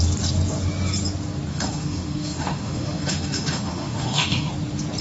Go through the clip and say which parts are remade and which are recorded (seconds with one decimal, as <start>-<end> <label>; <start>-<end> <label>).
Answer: 0.0-1.5 recorded; 1.5-4.5 remade; 4.5-5.0 recorded